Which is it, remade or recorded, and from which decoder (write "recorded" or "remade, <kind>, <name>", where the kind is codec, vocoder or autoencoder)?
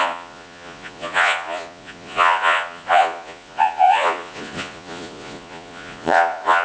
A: remade, vocoder, Vocos